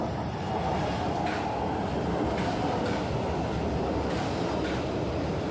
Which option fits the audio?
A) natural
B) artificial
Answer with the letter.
A